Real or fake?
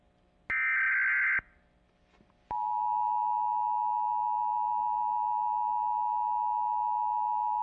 real